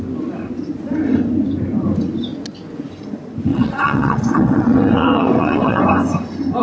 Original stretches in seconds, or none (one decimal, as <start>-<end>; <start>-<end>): 0.0-3.5; 5.8-6.6